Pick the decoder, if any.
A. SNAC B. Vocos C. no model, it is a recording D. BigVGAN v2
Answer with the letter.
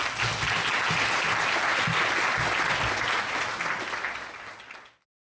C